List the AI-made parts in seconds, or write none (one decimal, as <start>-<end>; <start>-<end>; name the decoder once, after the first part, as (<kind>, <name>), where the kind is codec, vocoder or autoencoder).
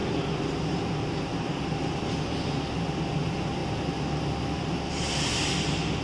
none